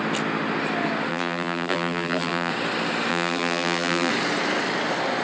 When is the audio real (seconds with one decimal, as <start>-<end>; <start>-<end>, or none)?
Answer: 0.0-1.1; 2.5-3.1; 4.1-5.2

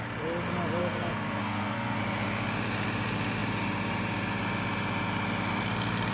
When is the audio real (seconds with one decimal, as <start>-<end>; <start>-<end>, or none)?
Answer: 0.0-0.8; 2.0-6.1